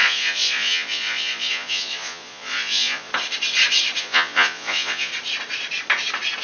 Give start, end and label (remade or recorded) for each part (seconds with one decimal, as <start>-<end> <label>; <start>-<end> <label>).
0.0-3.1 remade; 3.1-4.0 recorded; 4.0-5.1 remade; 5.1-6.4 recorded

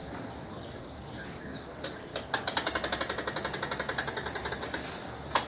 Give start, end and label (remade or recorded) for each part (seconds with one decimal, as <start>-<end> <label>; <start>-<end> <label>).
0.0-5.5 recorded

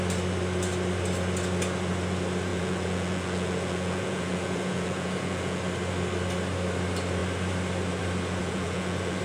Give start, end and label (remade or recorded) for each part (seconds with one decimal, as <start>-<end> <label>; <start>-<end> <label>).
0.0-2.5 recorded; 2.5-5.6 remade; 5.6-8.4 recorded; 8.4-9.2 remade